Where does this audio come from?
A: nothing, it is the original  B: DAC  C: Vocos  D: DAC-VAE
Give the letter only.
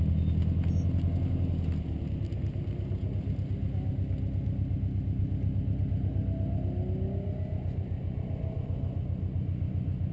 A